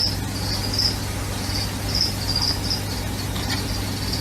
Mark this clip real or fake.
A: real